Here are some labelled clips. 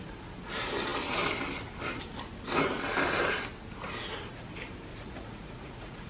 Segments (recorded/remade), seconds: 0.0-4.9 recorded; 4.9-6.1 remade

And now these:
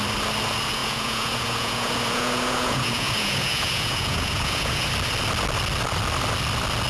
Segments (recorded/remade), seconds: 0.0-0.8 recorded; 0.8-4.9 remade; 4.9-6.9 recorded

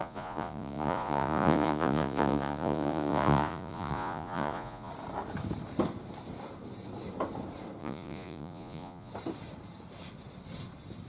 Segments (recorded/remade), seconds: 0.0-4.9 remade; 4.9-7.8 recorded; 7.8-9.1 remade; 9.1-11.1 recorded

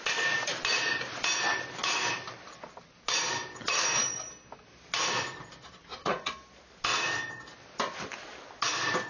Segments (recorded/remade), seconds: 0.0-5.8 recorded; 5.8-6.3 remade; 6.3-9.1 recorded

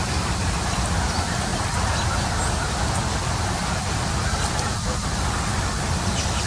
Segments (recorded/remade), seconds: 0.0-6.5 recorded

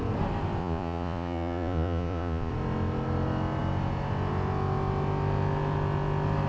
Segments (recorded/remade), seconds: 0.0-0.6 recorded; 0.6-2.5 remade; 2.5-6.5 recorded

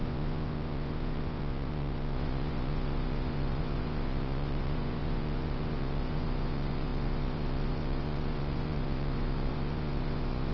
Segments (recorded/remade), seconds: 0.0-10.5 remade

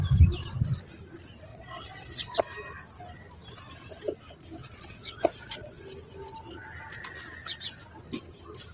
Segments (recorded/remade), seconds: 0.0-1.5 recorded; 1.5-2.4 remade; 2.4-4.6 recorded; 4.6-5.8 remade; 5.8-8.7 recorded